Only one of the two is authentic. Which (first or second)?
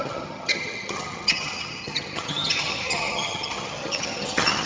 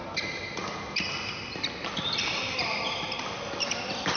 second